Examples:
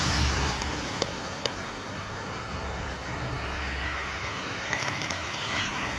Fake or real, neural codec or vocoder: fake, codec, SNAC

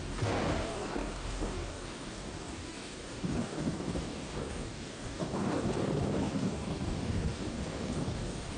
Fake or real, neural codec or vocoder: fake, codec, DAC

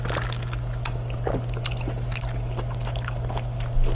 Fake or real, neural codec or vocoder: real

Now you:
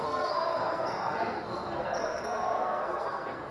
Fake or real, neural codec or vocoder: fake, codec, SNAC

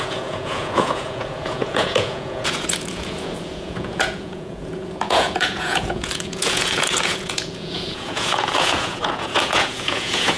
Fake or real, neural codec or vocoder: fake, vocoder, Vocos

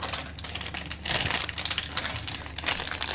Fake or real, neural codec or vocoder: real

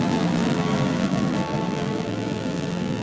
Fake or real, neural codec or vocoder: fake, vocoder, BigVGAN v2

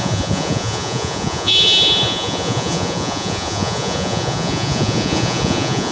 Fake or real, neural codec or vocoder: fake, vocoder, Vocos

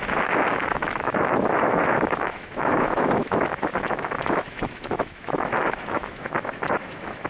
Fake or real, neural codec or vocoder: fake, autoencoder, DAC-VAE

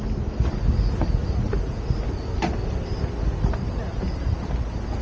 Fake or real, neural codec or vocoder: real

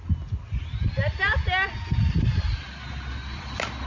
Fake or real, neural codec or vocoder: real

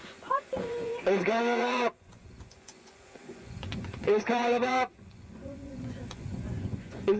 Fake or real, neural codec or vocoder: fake, vocoder, Vocos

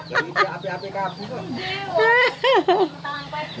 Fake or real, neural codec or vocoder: real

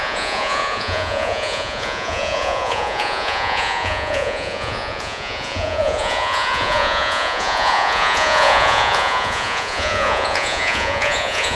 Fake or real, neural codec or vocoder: fake, vocoder, Vocos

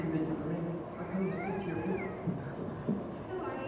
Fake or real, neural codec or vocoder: real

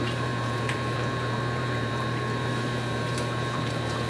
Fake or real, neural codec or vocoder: fake, vocoder, BigVGAN v2